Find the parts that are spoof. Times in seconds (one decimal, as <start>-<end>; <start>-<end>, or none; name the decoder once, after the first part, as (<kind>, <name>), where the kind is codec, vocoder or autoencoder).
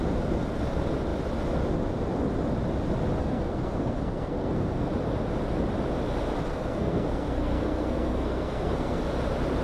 3.2-4.9 (codec, SNAC); 6.5-9.0